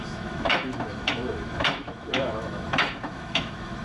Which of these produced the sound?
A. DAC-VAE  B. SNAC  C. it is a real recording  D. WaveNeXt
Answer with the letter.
A